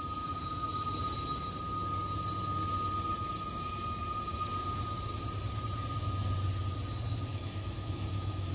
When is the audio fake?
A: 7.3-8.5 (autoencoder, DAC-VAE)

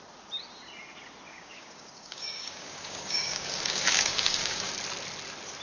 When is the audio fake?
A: 1.3-4.7 (codec, DAC)

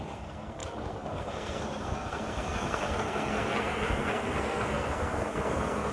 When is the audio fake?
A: 0.0-5.9 (codec, SNAC)

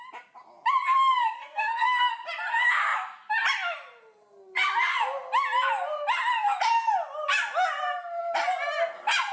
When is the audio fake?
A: 1.2-2.1 (codec, SNAC)

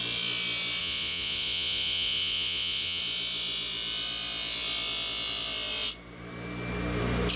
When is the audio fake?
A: 0.8-3.0 (vocoder, Vocos)

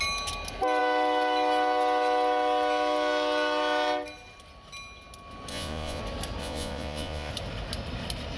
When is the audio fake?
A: 5.5-6.0 (vocoder, Vocos); 6.4-7.3

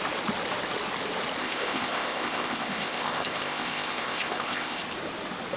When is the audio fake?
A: 1.4-4.8 (codec, ZipCodec)